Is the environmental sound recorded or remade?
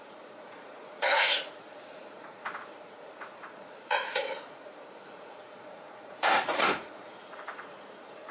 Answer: remade